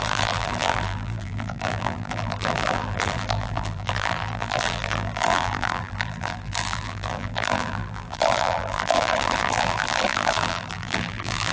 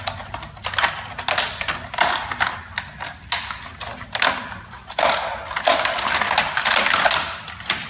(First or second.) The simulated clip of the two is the first